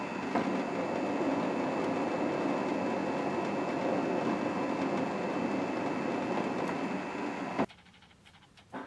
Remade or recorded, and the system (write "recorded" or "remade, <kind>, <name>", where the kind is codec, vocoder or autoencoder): recorded